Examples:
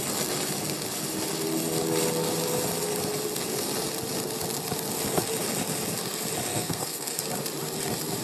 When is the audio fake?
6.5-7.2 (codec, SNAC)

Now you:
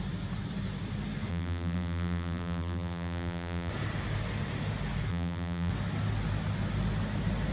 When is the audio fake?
1.3-3.7 (vocoder, BigVGAN v2); 5.1-5.7